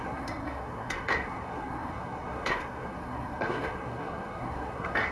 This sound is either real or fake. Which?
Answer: fake